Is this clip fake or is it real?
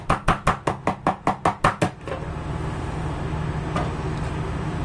real